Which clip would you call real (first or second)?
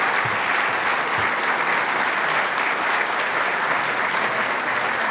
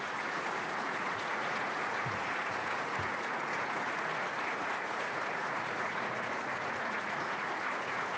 first